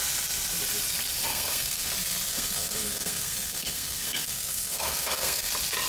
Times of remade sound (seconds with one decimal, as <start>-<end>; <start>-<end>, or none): 1.3-1.9; 2.3-5.5